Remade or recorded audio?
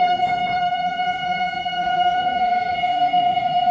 remade